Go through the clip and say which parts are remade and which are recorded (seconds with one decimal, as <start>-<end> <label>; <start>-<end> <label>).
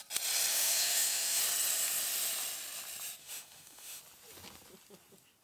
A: 0.0-0.5 recorded; 0.5-1.4 remade; 1.4-3.2 recorded; 3.2-4.0 remade; 4.0-5.4 recorded